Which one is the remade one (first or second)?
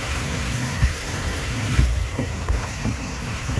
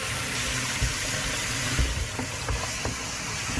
first